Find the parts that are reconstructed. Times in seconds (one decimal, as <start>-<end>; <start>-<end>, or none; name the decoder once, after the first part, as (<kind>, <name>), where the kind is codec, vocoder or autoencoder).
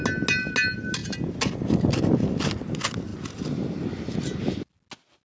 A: none